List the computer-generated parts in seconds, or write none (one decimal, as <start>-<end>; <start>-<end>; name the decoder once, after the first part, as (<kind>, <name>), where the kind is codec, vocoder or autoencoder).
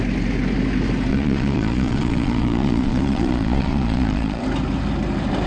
1.1-4.4 (vocoder, Vocos)